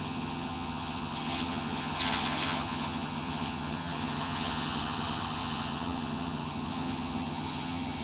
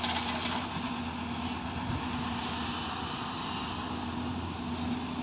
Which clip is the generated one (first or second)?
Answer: first